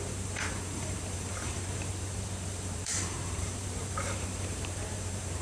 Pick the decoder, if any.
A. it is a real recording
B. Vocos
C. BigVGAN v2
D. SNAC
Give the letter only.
C